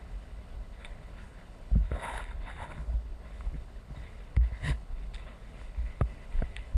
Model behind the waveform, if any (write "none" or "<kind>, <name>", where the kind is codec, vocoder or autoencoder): codec, HILCodec